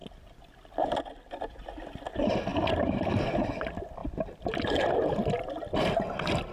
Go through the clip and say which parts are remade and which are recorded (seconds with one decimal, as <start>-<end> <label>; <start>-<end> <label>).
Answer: 0.0-2.5 recorded; 2.5-3.1 remade; 3.1-6.5 recorded